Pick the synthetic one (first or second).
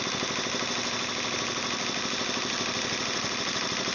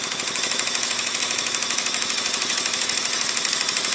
second